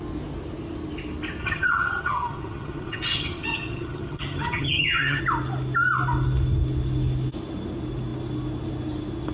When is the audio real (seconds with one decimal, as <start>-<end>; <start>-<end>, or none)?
0.0-1.4; 5.2-9.3